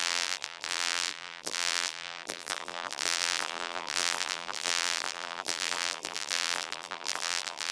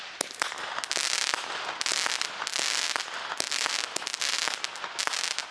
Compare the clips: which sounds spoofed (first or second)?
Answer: first